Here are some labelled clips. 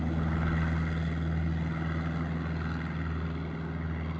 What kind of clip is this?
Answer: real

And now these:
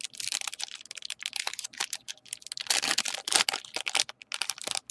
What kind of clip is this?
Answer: real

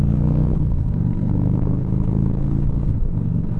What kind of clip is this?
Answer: fake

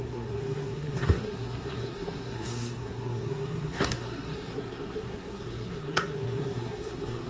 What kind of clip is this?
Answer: fake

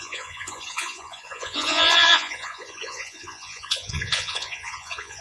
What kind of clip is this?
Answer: fake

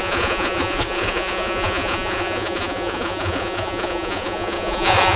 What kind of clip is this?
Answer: fake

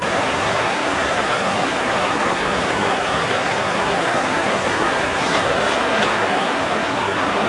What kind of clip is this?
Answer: fake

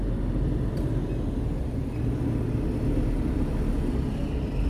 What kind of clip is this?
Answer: real